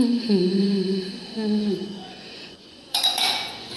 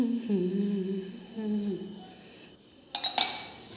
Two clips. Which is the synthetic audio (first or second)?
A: first